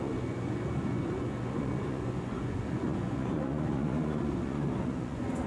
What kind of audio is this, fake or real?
fake